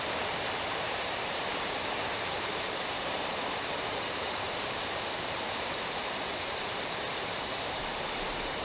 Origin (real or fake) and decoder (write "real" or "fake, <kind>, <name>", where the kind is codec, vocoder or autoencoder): fake, vocoder, BigVGAN v2